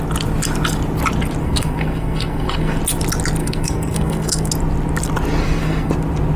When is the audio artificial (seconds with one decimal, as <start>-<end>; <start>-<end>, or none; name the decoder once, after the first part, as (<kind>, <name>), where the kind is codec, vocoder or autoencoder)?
1.4-2.8 (codec, SNAC); 3.4-4.5; 5.4-5.9

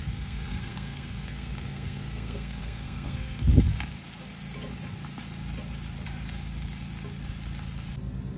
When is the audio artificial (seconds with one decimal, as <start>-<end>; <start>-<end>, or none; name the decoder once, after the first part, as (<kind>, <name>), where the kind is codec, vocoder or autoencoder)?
0.0-3.5 (codec, SNAC)

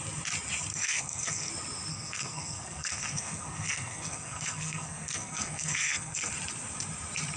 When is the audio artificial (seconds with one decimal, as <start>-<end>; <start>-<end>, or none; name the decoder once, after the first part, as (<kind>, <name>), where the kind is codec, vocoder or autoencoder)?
0.7-1.5 (codec, SNAC); 1.9-6.3

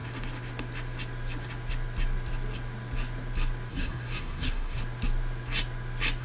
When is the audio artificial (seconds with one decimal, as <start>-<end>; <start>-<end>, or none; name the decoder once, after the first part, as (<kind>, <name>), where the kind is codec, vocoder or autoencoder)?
3.7-4.8 (codec, SNAC)

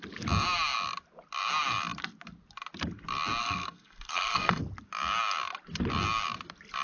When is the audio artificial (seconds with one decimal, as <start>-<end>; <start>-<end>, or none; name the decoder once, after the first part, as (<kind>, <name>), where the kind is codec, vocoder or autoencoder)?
3.4-4.6 (codec, SNAC)

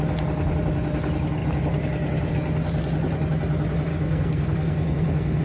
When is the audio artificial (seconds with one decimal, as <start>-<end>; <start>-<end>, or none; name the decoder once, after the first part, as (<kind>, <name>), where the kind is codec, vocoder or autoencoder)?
3.9-5.4 (codec, SNAC)

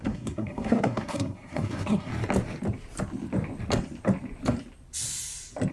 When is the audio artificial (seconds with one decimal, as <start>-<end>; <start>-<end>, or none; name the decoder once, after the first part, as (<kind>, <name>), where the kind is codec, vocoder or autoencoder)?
0.0-2.1 (codec, SNAC)

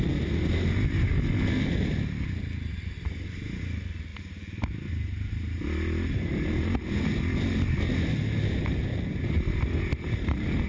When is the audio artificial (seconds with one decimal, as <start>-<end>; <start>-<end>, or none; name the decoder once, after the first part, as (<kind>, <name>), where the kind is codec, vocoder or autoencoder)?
none